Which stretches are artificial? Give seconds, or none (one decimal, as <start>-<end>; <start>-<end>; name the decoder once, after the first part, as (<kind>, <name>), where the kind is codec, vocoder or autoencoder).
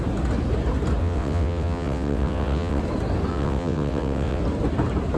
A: 1.0-2.8 (vocoder, WaveNeXt); 3.3-4.4